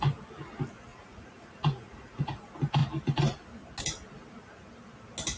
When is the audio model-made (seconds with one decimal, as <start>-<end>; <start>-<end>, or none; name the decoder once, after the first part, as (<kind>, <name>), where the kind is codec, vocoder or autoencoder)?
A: 0.9-2.4 (vocoder, Vocos)